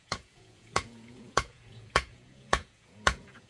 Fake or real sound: fake